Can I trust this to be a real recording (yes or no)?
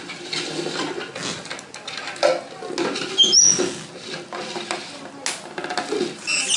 yes